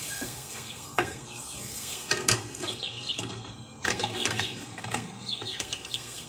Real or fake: fake